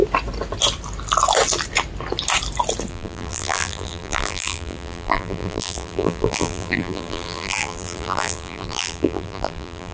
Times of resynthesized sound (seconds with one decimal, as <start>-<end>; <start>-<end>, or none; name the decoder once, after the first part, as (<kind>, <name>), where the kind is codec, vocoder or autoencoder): 2.9-9.9 (vocoder, BigVGAN v2)